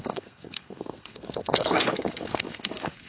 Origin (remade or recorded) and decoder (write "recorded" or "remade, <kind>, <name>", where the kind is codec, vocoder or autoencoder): remade, codec, SNAC